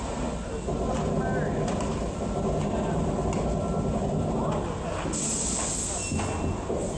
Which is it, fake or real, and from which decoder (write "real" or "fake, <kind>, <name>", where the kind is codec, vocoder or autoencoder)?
real